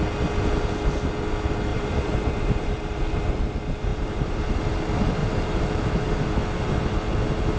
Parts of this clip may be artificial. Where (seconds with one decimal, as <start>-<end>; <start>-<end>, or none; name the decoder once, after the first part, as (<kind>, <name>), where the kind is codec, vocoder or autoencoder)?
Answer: 1.7-3.3 (vocoder, BigVGAN v2); 3.9-4.6; 5.2-5.9